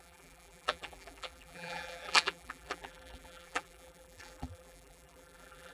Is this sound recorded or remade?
remade